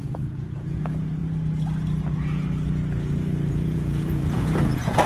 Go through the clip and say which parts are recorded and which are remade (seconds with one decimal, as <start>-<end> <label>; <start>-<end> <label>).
0.0-1.2 remade; 1.2-3.5 recorded; 3.5-5.1 remade